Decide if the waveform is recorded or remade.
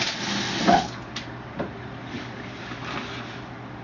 recorded